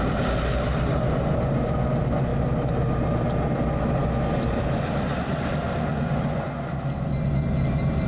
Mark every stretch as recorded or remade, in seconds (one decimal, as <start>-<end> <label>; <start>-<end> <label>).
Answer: 0.0-5.9 recorded; 5.9-6.6 remade; 6.6-8.1 recorded